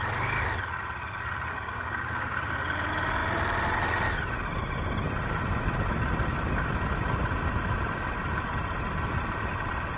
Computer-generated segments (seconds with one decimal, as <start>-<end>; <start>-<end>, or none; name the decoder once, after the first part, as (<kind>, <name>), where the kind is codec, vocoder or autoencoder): 1.5-2.5 (codec, DAC)

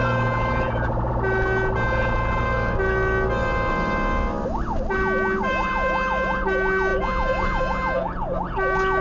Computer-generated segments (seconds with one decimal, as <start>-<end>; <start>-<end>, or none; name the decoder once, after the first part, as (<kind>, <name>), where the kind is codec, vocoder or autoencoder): none

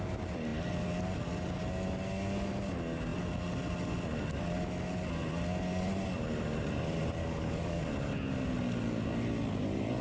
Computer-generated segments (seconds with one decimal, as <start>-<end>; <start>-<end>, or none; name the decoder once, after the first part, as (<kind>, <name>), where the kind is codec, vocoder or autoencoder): 7.2-7.8 (codec, DAC)